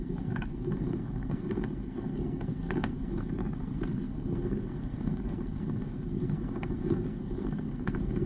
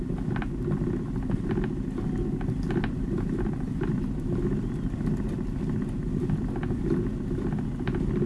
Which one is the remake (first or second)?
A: first